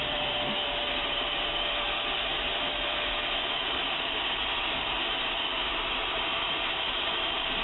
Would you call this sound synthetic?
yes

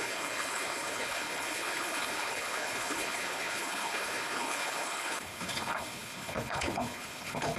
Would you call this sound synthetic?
yes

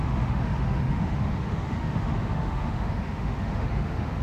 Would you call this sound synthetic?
yes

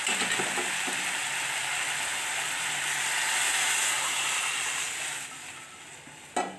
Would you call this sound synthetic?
no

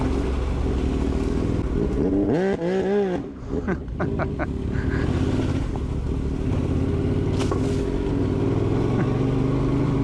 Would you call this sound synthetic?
no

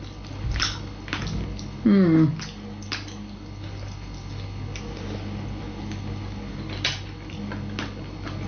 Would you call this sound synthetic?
no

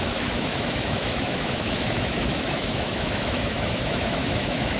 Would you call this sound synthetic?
yes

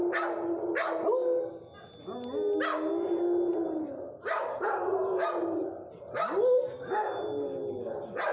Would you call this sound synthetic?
no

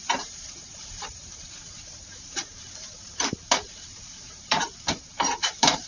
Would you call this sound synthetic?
yes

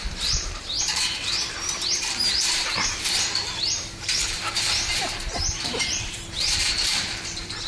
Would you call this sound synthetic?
yes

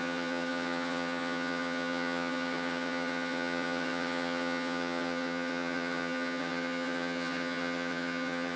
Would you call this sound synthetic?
yes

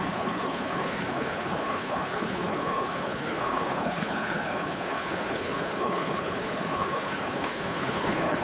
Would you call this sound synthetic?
yes